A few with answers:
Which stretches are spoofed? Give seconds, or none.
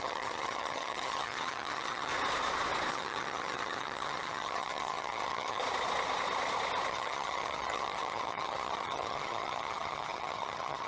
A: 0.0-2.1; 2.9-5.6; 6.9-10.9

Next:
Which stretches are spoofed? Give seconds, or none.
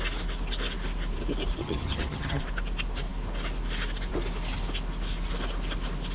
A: 1.6-2.4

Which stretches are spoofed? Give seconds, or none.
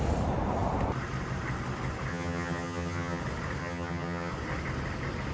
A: 2.1-3.2; 3.6-4.3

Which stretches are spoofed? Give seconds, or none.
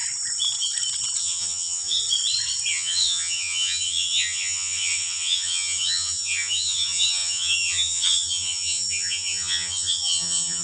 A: 1.2-2.0; 2.7-10.6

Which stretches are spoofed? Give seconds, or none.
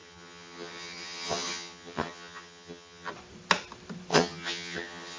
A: 0.0-3.1; 4.1-5.2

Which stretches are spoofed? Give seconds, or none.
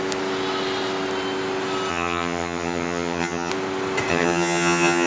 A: 1.9-3.5; 4.1-5.1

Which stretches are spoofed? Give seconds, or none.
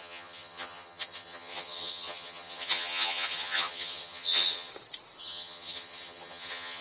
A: 0.0-4.7; 5.2-6.8